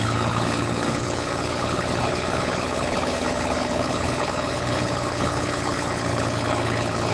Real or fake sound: fake